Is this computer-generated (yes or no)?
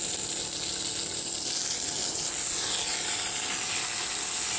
no